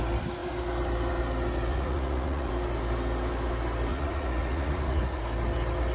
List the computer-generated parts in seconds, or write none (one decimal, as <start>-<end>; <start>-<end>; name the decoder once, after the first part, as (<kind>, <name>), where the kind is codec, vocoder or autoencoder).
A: 1.7-2.5 (vocoder, Vocos); 3.9-5.2

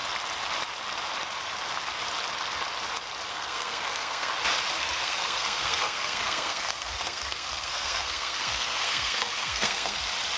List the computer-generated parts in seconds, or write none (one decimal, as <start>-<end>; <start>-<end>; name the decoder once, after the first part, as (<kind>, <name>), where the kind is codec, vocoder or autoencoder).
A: 3.3-4.3 (codec, SNAC); 4.8-10.0

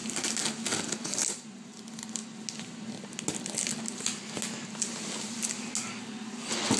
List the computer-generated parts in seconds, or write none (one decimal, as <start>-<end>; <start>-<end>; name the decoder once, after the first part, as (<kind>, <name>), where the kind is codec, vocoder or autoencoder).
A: none

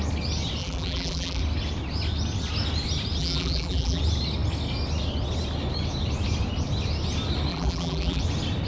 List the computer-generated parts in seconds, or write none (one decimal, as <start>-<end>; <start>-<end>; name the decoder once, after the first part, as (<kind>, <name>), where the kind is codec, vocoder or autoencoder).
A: 0.6-1.4 (vocoder, BigVGAN v2); 3.2-4.0; 7.5-8.2

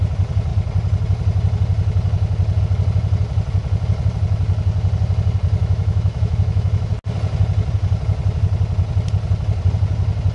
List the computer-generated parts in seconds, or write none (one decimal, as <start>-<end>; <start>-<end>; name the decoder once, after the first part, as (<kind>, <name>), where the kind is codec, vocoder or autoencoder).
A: 5.6-6.9 (autoencoder, DAC-VAE)

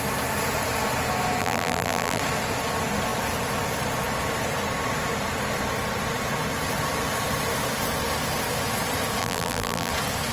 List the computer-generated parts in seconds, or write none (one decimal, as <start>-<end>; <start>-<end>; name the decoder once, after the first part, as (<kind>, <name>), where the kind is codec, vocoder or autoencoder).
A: 1.4-2.2 (vocoder, BigVGAN v2); 9.2-9.9